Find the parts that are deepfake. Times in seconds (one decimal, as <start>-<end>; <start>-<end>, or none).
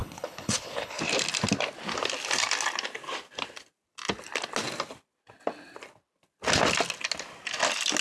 0.0-1.0